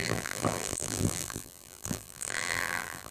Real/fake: fake